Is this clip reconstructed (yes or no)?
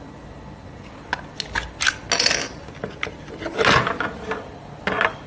no